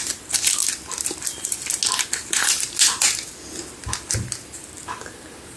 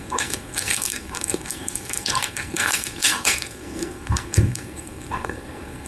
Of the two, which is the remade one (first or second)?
second